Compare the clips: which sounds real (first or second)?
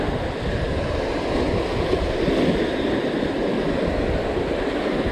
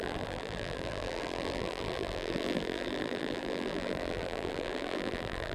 first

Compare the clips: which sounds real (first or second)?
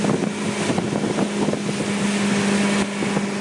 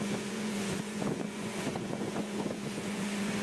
first